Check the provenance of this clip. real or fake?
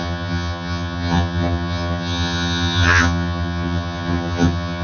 fake